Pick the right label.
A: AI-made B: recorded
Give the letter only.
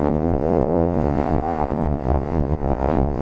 A